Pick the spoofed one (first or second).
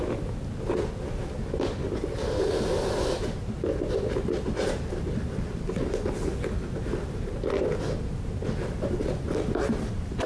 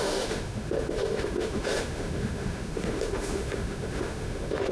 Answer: second